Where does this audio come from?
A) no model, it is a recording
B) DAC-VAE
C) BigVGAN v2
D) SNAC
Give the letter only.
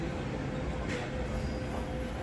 A